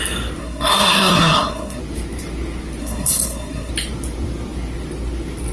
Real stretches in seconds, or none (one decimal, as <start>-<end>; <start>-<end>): 0.0-0.4; 1.8-2.8; 3.7-5.5